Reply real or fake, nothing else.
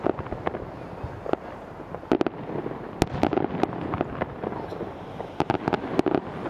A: real